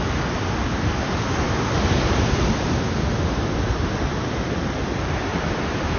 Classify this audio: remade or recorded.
recorded